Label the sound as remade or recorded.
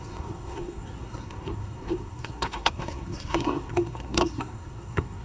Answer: remade